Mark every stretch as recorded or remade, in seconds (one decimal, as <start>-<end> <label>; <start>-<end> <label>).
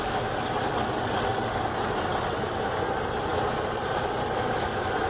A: 0.0-5.1 recorded